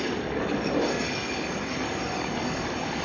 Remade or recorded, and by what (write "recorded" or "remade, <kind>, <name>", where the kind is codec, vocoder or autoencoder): remade, codec, DAC